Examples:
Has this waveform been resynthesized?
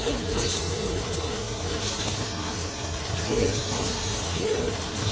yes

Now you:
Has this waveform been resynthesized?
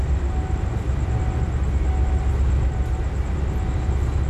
no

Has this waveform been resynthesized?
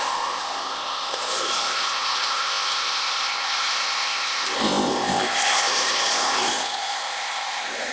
yes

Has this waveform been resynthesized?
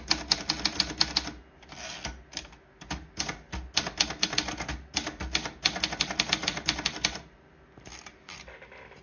no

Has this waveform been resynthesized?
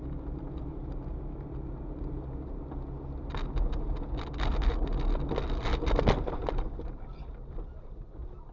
no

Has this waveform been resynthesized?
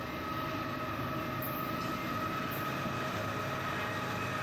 no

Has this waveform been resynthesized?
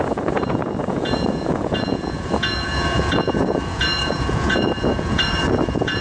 yes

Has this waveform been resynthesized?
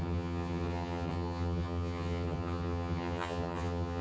yes